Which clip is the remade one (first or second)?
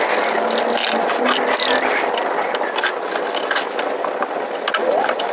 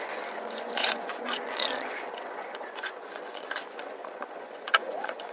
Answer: second